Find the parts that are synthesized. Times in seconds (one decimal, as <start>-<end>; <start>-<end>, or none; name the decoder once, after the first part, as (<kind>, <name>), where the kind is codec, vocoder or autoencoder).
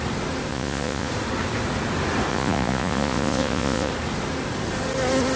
0.5-1.1 (vocoder, Vocos); 2.3-3.9